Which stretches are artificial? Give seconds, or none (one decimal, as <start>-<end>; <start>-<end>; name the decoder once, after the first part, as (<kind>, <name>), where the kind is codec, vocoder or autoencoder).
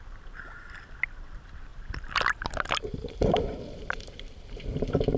1.7-3.8 (vocoder, BigVGAN v2)